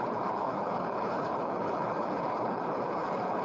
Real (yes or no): no